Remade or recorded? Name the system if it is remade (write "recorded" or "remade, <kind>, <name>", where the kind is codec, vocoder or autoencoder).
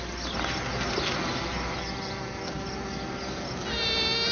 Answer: recorded